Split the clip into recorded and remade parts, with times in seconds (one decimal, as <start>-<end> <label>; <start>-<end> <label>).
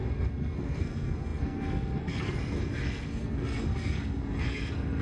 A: 0.0-5.0 remade